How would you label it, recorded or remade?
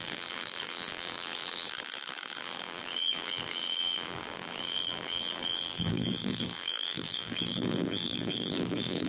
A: remade